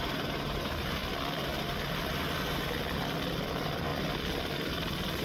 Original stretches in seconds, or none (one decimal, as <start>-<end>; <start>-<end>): 1.0-3.3; 3.9-4.7